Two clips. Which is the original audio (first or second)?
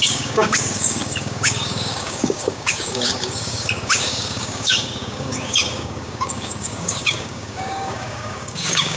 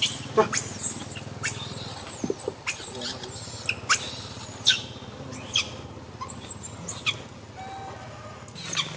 second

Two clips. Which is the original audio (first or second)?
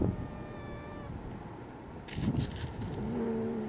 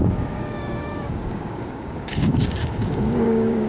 first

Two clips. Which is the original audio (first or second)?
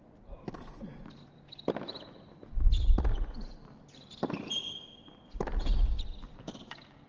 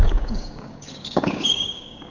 first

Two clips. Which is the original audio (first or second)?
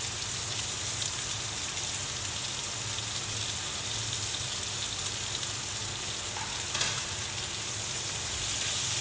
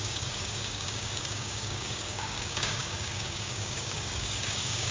first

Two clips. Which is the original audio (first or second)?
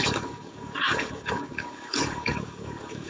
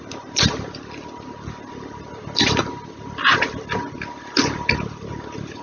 second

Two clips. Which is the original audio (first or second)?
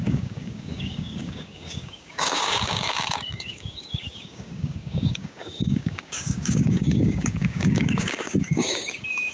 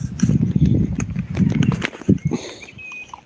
second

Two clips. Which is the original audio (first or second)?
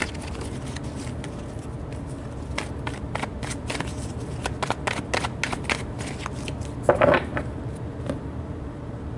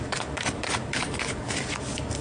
first